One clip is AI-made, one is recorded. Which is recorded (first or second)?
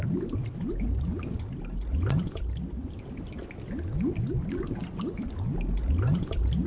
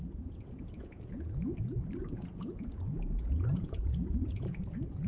first